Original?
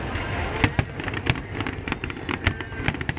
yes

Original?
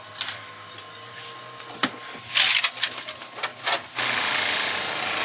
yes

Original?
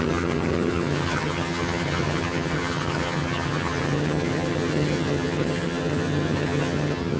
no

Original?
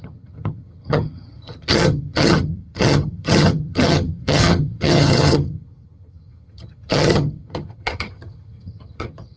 no